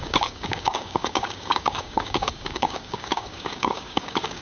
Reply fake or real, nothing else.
fake